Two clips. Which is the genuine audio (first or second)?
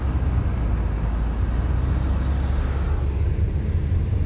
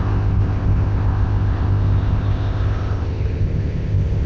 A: first